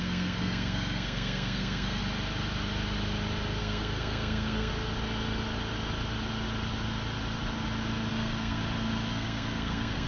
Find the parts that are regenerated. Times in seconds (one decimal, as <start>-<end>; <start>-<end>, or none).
0.0-2.0; 3.6-4.7; 8.1-8.6; 9.1-10.1